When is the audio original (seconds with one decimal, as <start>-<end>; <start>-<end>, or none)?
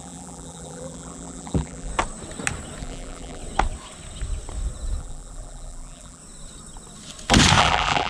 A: 1.9-2.8; 3.4-5.0; 6.2-7.6